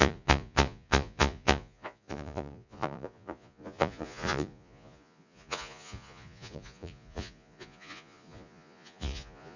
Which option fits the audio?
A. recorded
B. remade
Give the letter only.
B